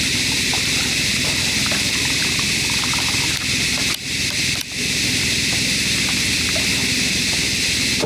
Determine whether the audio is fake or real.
real